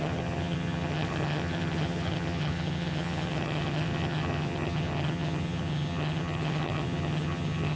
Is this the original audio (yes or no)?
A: no